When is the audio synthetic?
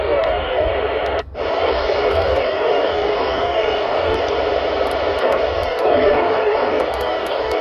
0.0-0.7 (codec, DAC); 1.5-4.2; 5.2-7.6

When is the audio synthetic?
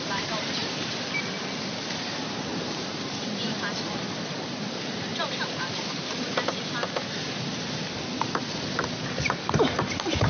0.0-0.6 (vocoder, BigVGAN v2); 1.8-5.1; 7.7-10.3